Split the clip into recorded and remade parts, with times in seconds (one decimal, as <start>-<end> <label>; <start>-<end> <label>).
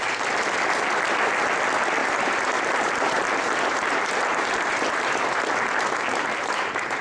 0.0-2.0 recorded; 2.0-5.4 remade; 5.4-6.1 recorded; 6.1-7.0 remade